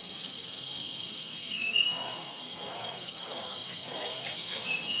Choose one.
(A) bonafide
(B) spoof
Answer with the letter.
B